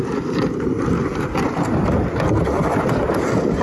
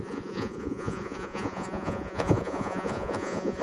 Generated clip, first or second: second